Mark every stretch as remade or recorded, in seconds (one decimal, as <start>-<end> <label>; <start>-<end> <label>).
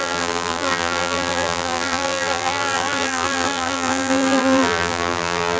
0.0-5.6 remade